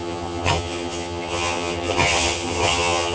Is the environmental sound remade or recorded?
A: remade